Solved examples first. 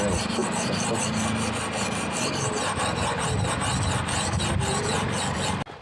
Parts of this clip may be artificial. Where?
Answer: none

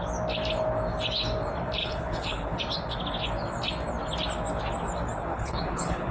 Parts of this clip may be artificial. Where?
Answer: 1.8-2.6 (codec, HILCodec); 5.3-6.1

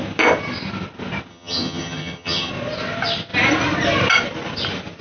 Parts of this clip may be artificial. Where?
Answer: 1.3-2.5 (vocoder, HiFi-GAN)

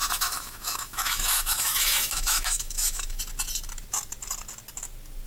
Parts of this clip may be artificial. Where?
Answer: 0.0-3.2 (autoencoder, DAC-VAE)

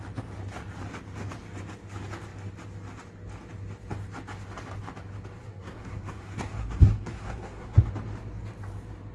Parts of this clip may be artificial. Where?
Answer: 5.4-7.8 (codec, SNAC)